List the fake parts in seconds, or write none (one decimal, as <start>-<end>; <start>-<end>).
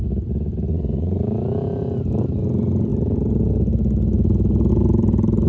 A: 0.7-1.2